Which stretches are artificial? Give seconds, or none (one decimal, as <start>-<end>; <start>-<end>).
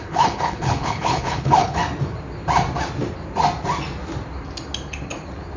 0.0-1.8